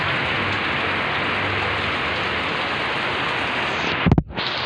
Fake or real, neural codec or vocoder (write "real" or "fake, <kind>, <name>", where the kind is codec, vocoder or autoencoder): real